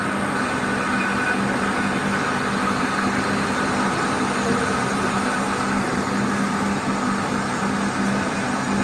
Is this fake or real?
real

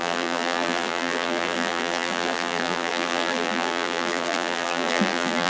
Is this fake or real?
fake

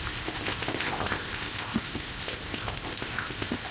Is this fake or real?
fake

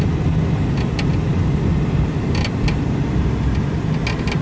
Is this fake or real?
real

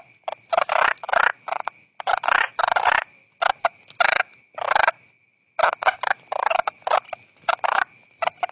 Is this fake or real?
real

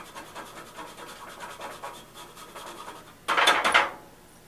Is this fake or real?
real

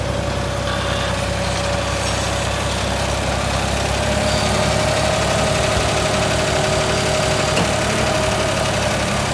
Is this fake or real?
real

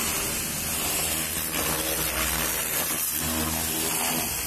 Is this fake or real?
real